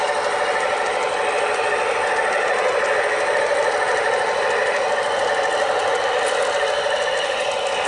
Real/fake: real